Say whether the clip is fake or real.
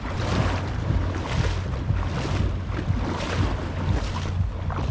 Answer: real